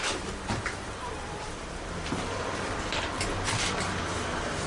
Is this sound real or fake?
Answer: fake